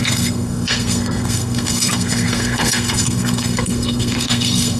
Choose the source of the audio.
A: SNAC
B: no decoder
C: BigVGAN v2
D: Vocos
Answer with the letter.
A